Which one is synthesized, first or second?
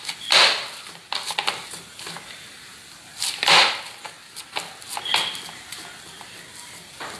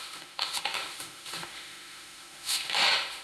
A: second